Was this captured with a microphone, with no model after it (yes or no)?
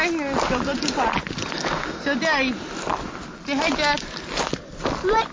yes